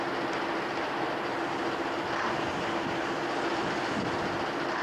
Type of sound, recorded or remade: recorded